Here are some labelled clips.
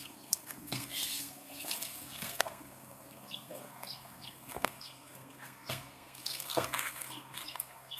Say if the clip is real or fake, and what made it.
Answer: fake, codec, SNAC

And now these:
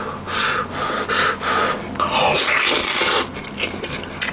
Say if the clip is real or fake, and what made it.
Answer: real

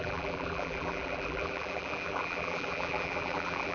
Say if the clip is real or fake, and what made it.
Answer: fake, vocoder, BigVGAN v2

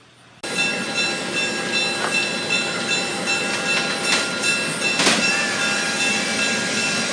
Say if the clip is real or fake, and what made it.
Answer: real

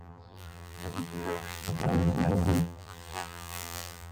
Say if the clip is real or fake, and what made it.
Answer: fake, vocoder, BigVGAN v2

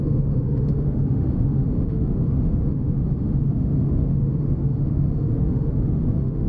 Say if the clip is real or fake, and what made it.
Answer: fake, autoencoder, DAC-VAE